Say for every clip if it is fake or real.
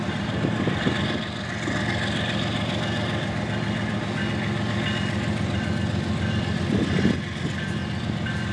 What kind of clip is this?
real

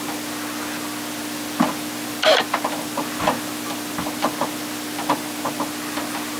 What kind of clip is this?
real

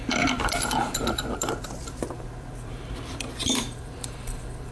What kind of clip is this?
fake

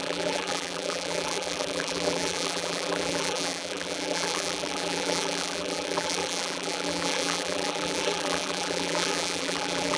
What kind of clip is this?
fake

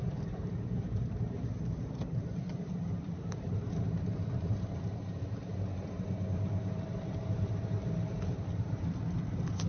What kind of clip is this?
fake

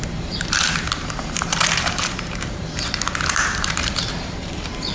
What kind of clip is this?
fake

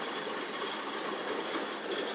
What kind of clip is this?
real